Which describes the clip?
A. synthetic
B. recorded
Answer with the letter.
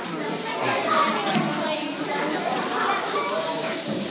B